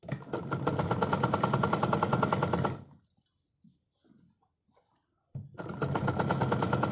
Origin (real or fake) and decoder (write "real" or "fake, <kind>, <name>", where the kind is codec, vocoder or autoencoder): real